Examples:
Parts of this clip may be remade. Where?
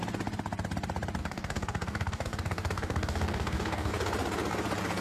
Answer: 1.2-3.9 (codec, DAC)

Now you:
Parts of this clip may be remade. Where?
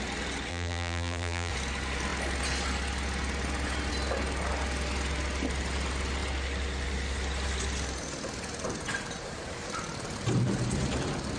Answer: 0.5-1.5 (vocoder, BigVGAN v2)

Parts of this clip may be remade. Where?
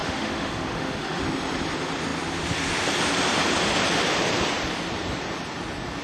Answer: 0.0-1.2 (autoencoder, DAC-VAE)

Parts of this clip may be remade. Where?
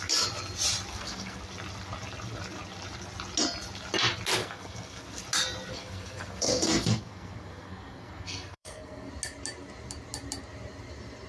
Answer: 0.9-1.4 (codec, SNAC); 4.4-5.2; 5.7-9.1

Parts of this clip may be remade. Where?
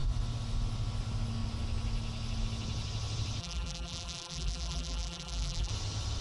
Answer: 3.4-5.7 (vocoder, BigVGAN v2)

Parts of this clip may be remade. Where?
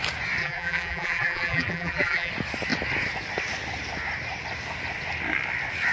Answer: 0.4-2.3 (vocoder, BigVGAN v2)